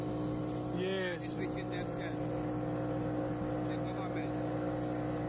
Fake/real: real